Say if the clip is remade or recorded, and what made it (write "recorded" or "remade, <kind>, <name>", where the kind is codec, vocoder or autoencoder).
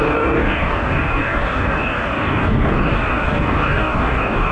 remade, codec, DAC